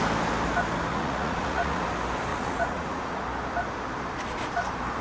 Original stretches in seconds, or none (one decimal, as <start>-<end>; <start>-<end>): 0.0-0.9; 1.8-2.3; 3.2-5.0

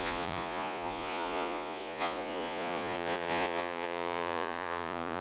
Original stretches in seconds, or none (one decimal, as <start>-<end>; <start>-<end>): none

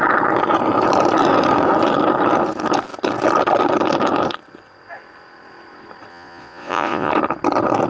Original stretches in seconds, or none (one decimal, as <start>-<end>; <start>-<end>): 0.0-6.1; 7.1-7.9

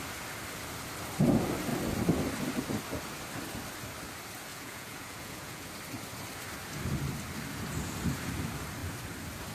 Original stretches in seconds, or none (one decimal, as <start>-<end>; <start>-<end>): 0.0-4.5; 5.7-9.5

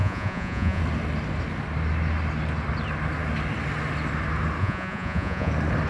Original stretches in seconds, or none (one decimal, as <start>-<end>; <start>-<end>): 0.8-4.6; 5.5-5.9